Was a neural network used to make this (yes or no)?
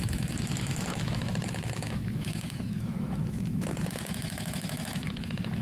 yes